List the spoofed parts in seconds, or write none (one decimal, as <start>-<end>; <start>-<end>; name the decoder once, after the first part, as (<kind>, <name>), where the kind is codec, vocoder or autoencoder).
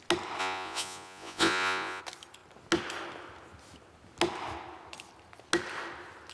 0.4-2.0 (vocoder, Vocos)